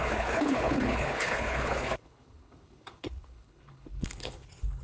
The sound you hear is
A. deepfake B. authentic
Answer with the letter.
A